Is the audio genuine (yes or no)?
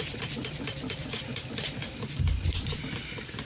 no